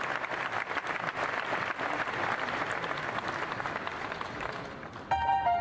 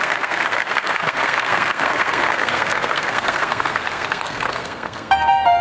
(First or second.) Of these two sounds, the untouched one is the first